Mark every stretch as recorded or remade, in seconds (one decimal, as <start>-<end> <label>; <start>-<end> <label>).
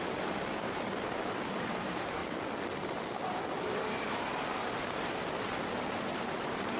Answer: 0.0-2.2 remade; 2.2-3.6 recorded; 3.6-6.8 remade